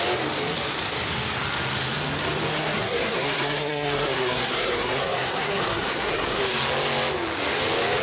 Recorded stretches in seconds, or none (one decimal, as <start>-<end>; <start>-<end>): 0.0-2.5; 6.4-8.0